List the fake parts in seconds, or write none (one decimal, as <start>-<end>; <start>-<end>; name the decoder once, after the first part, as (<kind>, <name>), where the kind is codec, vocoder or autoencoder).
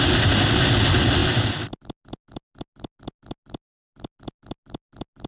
none